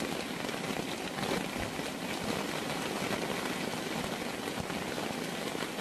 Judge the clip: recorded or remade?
recorded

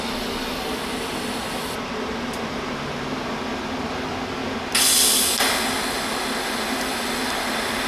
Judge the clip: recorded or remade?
recorded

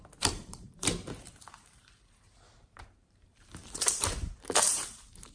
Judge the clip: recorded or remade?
remade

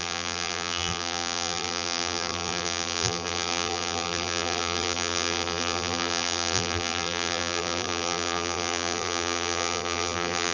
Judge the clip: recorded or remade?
remade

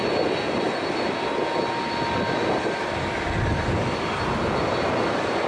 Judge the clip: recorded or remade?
recorded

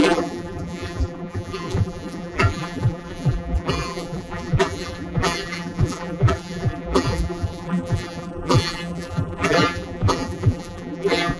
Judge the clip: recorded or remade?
remade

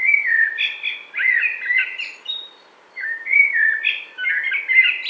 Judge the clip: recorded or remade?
remade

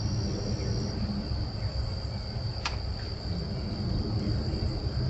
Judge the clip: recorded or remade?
recorded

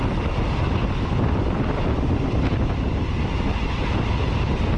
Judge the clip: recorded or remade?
recorded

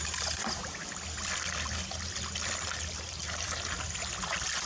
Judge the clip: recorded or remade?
recorded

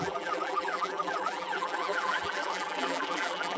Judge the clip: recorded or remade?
remade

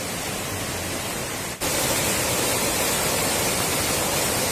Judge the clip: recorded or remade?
recorded